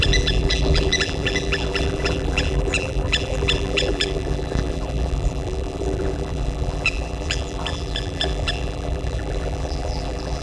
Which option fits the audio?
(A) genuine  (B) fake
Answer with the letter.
B